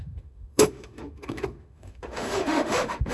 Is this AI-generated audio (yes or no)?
yes